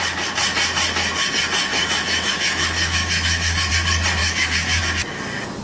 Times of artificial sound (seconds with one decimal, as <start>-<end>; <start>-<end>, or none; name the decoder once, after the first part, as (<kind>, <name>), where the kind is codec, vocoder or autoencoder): 1.7-3.7 (autoencoder, DAC-VAE); 4.2-4.8